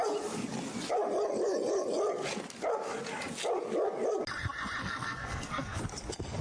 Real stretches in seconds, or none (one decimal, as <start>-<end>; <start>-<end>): 0.0-4.8; 5.8-6.4